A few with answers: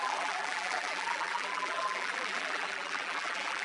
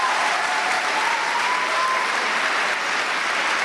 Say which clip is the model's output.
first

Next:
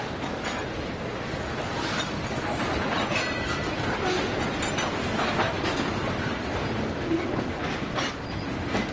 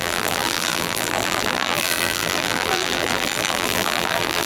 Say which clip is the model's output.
second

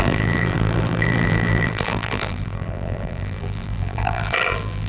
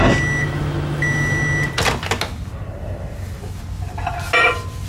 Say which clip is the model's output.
first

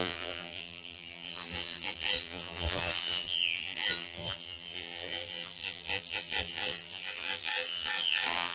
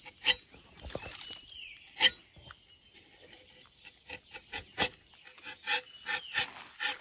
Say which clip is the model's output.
first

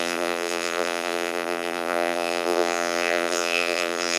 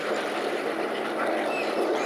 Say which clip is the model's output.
first